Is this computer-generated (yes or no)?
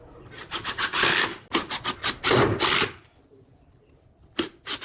no